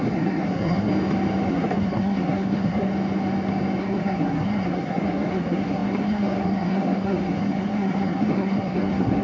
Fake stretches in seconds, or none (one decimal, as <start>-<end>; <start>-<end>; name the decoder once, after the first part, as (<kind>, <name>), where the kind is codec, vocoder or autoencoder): 0.0-0.9 (codec, SNAC); 1.5-2.9; 3.8-9.2

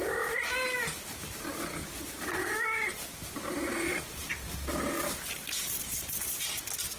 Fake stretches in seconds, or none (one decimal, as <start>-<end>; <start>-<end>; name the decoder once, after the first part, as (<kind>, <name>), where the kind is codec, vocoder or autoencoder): none